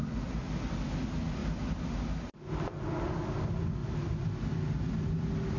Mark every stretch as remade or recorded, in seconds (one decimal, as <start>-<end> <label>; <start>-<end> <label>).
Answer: 0.0-5.6 recorded